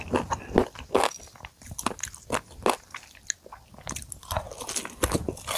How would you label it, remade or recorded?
recorded